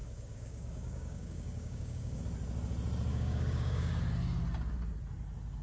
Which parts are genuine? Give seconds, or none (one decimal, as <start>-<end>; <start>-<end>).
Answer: 2.2-3.1; 4.0-5.6